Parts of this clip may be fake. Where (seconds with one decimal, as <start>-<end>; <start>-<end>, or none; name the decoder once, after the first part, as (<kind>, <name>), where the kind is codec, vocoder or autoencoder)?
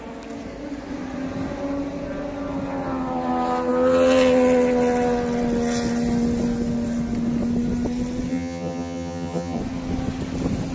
8.3-9.6 (vocoder, HiFi-GAN)